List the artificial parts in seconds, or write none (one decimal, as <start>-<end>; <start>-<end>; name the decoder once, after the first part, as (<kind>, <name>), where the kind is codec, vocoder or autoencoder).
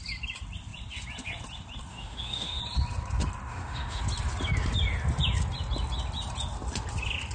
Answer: 1.9-2.6 (autoencoder, DAC-VAE); 3.5-4.0